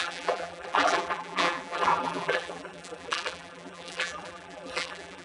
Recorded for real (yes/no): no